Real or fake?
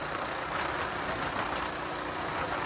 real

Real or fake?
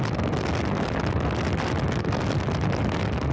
real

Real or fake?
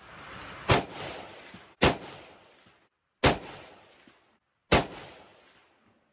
real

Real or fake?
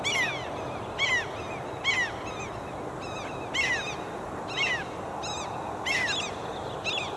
real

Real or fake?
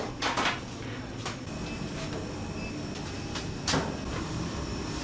real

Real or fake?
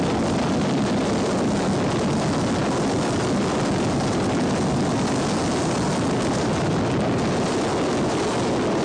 real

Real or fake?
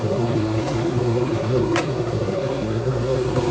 fake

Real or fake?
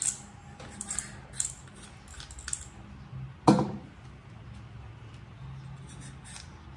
real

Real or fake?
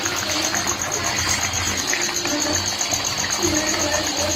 real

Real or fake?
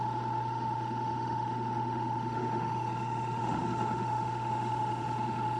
fake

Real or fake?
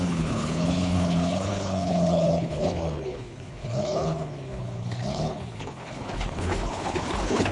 fake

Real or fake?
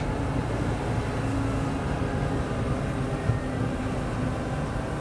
real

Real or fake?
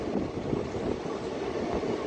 real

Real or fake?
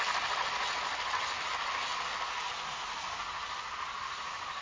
real